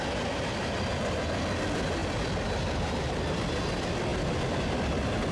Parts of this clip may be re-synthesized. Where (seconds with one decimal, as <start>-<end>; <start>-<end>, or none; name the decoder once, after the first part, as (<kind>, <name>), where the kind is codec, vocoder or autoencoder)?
none